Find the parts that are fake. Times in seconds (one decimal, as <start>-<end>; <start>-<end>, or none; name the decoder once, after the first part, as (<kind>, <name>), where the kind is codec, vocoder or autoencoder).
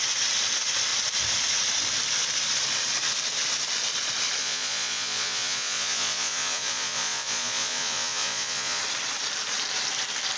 4.4-8.8 (vocoder, Vocos)